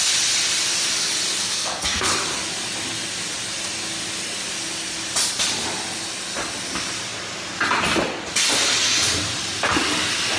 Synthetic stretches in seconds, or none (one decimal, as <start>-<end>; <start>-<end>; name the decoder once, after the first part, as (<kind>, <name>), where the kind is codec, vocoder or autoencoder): 1.4-2.1 (codec, SNAC)